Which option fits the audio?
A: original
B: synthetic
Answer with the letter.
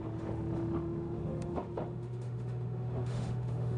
B